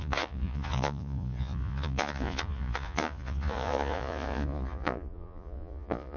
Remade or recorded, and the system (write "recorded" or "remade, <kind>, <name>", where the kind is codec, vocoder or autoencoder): remade, vocoder, Vocos